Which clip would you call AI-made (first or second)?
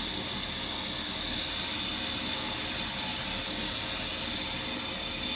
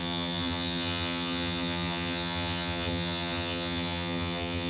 second